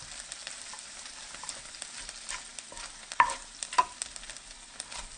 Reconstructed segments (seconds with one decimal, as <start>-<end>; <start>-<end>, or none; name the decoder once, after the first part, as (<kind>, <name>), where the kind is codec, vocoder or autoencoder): none